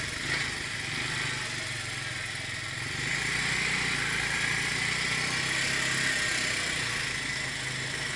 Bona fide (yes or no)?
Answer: yes